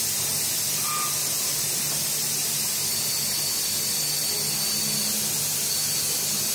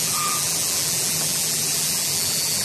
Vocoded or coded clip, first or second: second